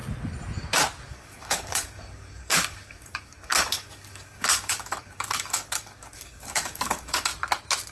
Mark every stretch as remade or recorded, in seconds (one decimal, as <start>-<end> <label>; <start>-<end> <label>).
0.0-1.1 recorded; 1.1-7.3 remade; 7.3-7.9 recorded